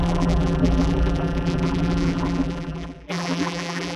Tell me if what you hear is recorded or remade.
remade